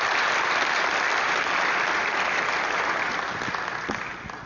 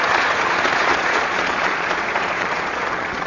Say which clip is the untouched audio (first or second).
first